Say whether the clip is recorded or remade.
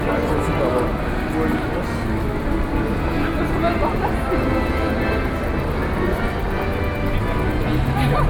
recorded